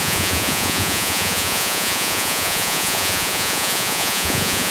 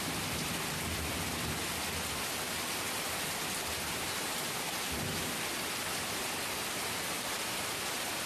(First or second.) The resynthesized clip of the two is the first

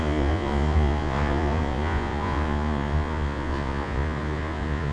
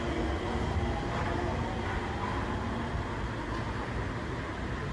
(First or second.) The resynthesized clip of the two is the first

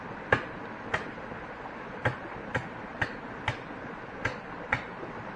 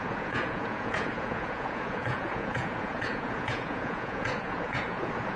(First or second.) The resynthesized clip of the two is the second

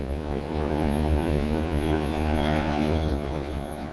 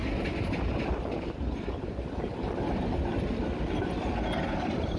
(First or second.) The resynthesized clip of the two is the first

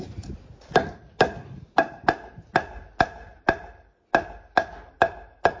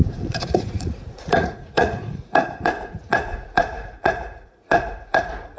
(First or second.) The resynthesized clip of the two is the second